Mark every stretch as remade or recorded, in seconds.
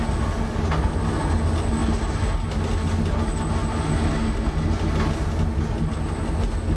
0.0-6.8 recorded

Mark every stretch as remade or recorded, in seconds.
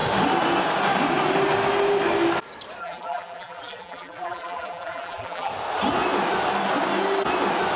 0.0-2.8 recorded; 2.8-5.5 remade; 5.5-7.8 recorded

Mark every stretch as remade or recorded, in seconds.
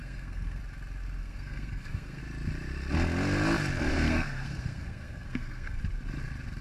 0.0-0.6 remade; 0.6-1.2 recorded; 1.2-2.2 remade; 2.2-3.9 recorded; 3.9-5.8 remade; 5.8-6.6 recorded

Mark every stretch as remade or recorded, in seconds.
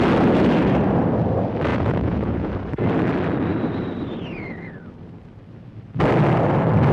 0.0-1.7 recorded; 1.7-2.5 remade; 2.5-6.9 recorded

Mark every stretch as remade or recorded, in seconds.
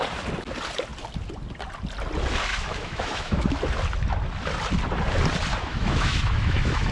0.0-2.5 recorded; 2.5-3.6 remade; 3.6-5.5 recorded; 5.5-6.9 remade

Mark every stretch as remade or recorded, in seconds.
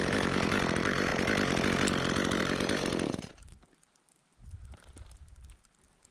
0.0-1.1 remade; 1.1-2.4 recorded; 2.4-6.1 remade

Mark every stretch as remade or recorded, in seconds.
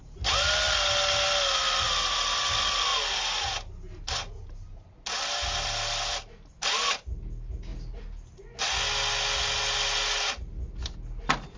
0.0-11.6 recorded